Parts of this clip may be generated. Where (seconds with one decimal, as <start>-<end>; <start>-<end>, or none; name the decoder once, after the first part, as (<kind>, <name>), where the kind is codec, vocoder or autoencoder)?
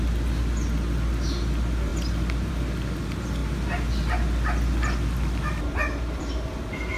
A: none